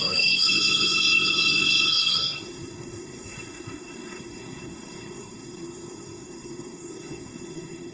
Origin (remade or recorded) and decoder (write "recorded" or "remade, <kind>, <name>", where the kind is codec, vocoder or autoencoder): remade, codec, SNAC